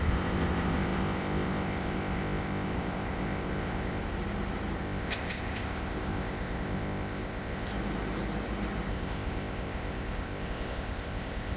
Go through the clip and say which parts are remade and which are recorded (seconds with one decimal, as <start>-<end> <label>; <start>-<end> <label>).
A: 0.0-4.0 remade; 4.0-4.8 recorded; 4.8-7.7 remade; 7.7-8.9 recorded; 8.9-11.6 remade